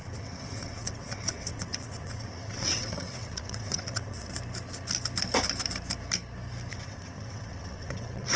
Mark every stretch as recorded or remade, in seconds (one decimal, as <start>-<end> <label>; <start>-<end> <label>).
0.0-4.3 remade; 4.3-6.7 recorded; 6.7-8.4 remade